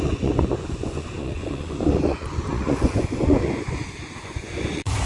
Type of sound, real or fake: fake